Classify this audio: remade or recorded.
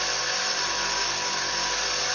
recorded